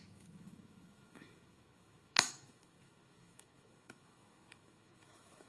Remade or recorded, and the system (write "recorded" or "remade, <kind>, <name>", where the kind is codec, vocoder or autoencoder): remade, autoencoder, DAC-VAE